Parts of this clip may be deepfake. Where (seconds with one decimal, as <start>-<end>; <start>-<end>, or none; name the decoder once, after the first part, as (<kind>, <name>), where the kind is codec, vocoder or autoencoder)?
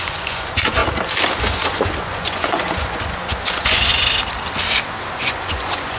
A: 0.0-0.8 (vocoder, Vocos); 1.4-3.9; 5.1-6.0